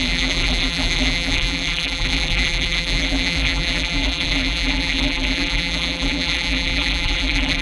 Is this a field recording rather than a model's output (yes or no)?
no